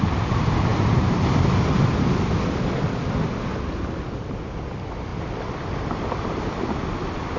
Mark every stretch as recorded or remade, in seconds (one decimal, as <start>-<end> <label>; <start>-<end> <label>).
0.0-7.4 recorded